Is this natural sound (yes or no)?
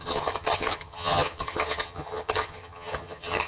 no